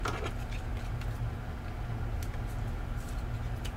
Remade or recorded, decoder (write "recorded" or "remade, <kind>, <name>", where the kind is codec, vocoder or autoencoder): recorded